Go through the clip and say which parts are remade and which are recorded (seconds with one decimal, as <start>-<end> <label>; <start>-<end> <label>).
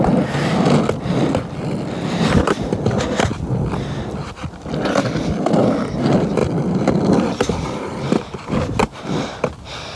0.0-8.8 recorded; 8.8-9.6 remade; 9.6-10.0 recorded